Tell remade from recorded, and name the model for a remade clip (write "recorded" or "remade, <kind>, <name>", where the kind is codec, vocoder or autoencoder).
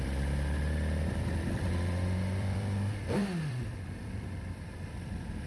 remade, vocoder, BigVGAN v2